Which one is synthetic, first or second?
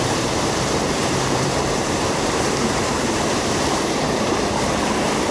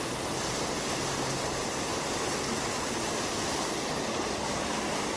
first